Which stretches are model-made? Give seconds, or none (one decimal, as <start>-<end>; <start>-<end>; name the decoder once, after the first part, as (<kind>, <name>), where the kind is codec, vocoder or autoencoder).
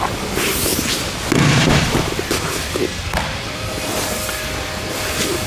none